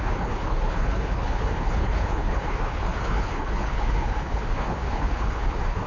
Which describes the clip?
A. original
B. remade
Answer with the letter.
B